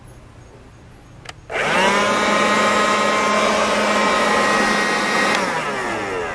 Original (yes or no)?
yes